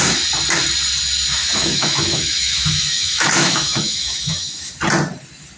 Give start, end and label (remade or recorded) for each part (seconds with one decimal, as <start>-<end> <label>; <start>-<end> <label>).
0.0-1.3 recorded; 1.3-4.7 remade; 4.7-5.6 recorded